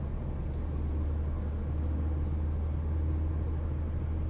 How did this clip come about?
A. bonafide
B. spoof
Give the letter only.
A